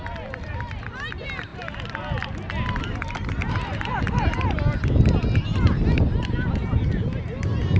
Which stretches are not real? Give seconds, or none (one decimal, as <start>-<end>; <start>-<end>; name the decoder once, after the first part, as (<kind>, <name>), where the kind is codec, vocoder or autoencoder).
none